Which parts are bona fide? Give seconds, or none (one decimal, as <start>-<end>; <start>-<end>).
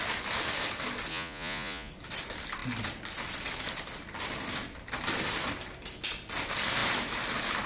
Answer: 0.0-1.1; 1.9-7.7